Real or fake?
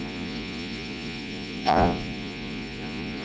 fake